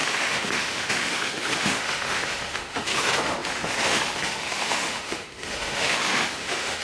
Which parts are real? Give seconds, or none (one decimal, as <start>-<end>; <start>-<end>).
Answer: none